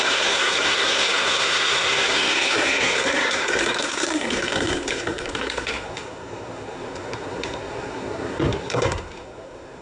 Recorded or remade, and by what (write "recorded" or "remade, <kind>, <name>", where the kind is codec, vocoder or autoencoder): remade, codec, SNAC